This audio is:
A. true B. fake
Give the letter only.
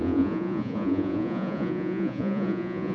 B